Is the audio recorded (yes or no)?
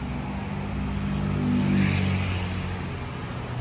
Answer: yes